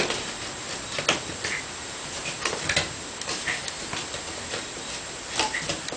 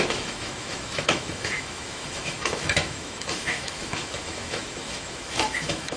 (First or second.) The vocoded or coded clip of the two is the second